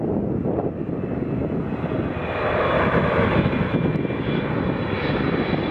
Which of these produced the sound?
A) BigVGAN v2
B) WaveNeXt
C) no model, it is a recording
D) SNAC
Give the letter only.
C